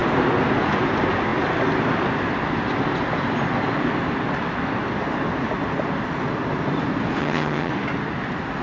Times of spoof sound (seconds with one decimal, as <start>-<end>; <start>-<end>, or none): 7.2-7.7